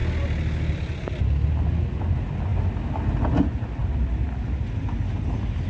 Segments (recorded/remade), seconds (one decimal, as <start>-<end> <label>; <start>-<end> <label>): 0.0-5.7 recorded